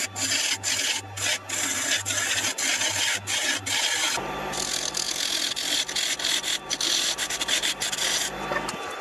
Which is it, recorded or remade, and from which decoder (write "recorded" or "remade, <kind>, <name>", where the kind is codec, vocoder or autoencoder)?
recorded